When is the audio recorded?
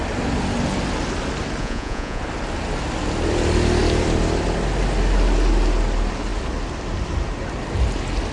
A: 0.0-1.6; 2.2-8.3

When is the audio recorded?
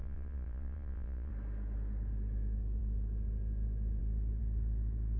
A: 1.3-5.2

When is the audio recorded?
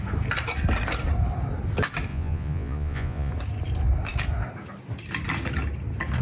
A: 0.0-2.1; 3.3-6.2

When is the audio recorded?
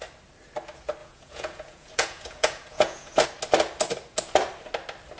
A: 0.0-1.0; 3.2-5.2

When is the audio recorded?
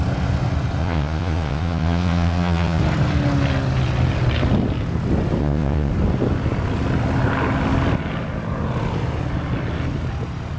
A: 0.0-0.8; 2.8-5.4; 5.9-10.6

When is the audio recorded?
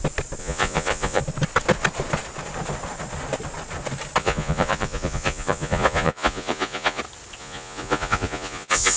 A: 0.0-0.4; 1.2-4.2; 7.0-7.4